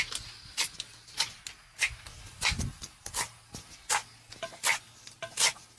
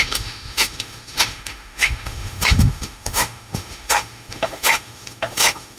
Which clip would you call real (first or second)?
first